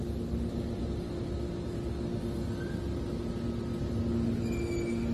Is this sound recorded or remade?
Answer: recorded